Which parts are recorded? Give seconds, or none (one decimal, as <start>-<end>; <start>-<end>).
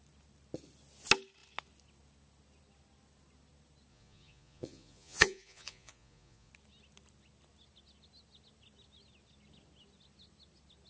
0.0-3.9; 6.5-10.9